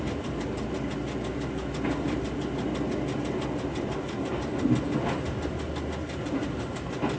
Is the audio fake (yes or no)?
no